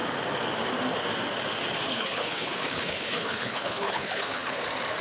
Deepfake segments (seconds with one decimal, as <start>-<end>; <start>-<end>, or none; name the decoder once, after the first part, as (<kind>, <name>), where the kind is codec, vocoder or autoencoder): 1.9-4.6 (codec, HILCodec)